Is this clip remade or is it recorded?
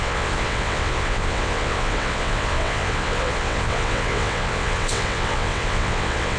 remade